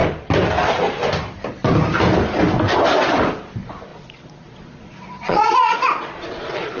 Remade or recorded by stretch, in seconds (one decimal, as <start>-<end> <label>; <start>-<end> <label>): 0.0-3.9 recorded; 3.9-6.8 remade